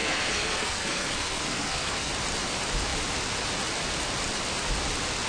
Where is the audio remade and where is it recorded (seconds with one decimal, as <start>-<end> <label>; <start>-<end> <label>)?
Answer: 0.0-2.1 remade; 2.1-5.3 recorded